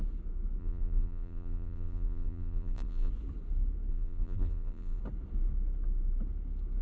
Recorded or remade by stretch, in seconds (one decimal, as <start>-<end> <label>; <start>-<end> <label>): 0.0-0.6 recorded; 0.6-3.1 remade; 3.1-3.9 recorded; 3.9-5.0 remade; 5.0-6.8 recorded